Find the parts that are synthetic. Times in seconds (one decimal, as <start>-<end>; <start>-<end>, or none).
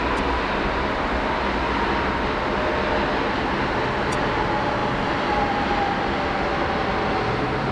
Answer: 4.8-5.8